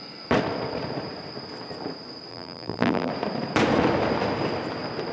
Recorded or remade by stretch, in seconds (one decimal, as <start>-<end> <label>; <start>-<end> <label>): 0.0-2.3 recorded; 2.3-3.1 remade; 3.1-5.1 recorded